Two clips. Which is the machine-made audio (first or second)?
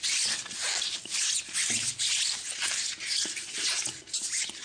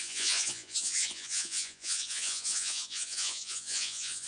second